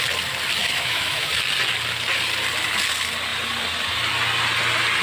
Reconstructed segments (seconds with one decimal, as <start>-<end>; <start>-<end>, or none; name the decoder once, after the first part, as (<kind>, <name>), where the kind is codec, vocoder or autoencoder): 0.6-1.3 (autoencoder, DAC-VAE)